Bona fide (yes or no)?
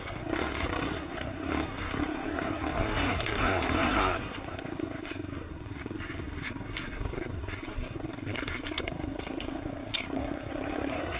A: no